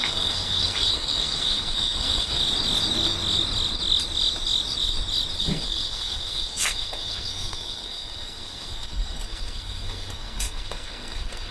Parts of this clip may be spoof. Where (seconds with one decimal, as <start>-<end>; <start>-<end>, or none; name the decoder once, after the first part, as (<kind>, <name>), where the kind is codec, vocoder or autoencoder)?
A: 0.0-2.4 (codec, SNAC); 5.4-11.5